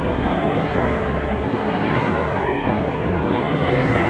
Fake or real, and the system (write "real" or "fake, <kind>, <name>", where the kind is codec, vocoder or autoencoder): fake, codec, SNAC